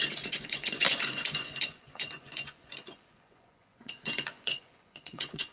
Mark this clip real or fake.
fake